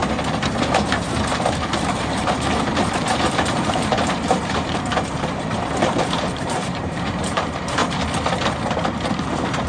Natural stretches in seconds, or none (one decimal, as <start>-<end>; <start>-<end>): 7.8-9.1